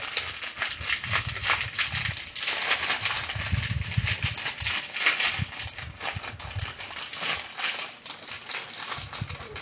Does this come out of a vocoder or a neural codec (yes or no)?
no